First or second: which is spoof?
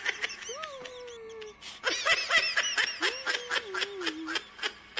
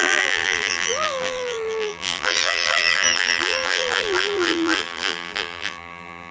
second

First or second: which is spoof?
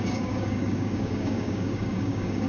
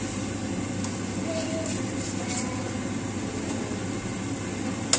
first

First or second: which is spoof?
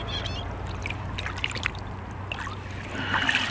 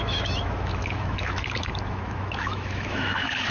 second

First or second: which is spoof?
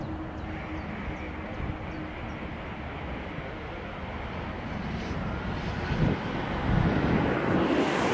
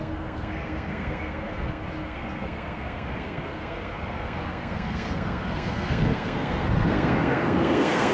second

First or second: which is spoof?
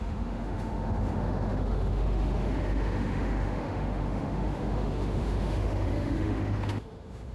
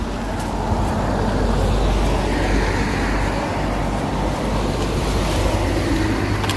first